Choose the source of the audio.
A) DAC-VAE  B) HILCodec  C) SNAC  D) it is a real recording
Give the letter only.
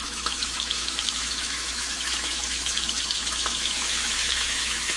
A